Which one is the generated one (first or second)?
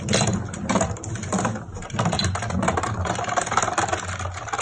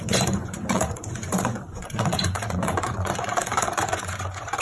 second